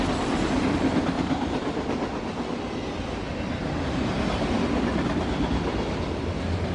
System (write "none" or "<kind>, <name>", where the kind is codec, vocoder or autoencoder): none